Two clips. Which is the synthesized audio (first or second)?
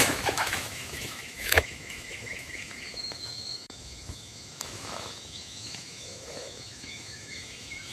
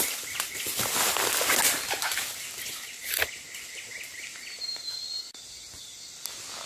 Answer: first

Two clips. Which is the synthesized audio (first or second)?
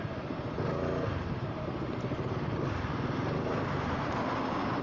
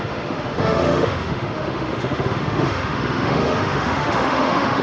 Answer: second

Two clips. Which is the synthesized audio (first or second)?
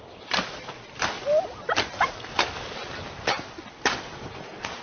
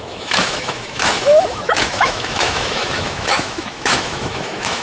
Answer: second